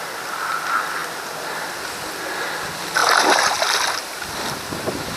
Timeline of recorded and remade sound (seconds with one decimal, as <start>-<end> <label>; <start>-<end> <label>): 0.0-1.0 recorded; 1.0-1.9 remade; 1.9-3.0 recorded; 3.0-4.4 remade; 4.4-5.2 recorded